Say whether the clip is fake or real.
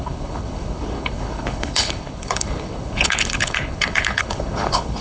fake